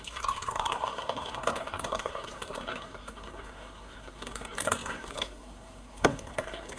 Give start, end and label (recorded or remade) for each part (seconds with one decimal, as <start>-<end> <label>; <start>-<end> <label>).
0.0-6.8 remade